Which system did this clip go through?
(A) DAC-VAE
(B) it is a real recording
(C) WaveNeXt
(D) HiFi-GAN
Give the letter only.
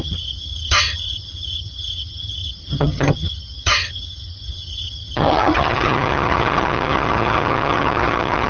D